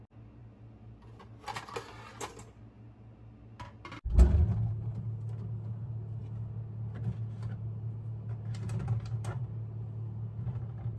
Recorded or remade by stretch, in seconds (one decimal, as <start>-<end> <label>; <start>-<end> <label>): 0.0-11.0 recorded

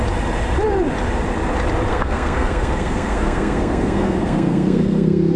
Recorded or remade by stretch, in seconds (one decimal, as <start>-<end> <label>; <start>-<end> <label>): 0.0-1.9 recorded; 1.9-5.4 remade

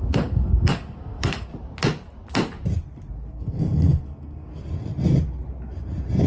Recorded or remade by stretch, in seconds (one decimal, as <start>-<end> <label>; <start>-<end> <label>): 0.0-1.5 remade; 1.5-3.3 recorded; 3.3-4.5 remade; 4.5-6.3 recorded

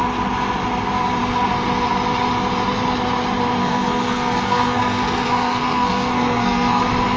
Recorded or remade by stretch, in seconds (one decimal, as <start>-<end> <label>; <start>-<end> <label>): 0.0-3.6 recorded; 3.6-6.8 remade; 6.8-7.2 recorded

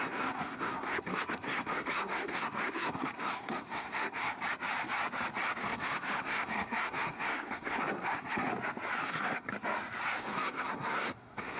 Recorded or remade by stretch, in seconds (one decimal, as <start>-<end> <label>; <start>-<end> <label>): 0.0-4.3 remade; 4.3-5.6 recorded; 5.6-8.5 remade; 8.5-9.0 recorded; 9.0-9.5 remade; 9.5-10.2 recorded; 10.2-11.6 remade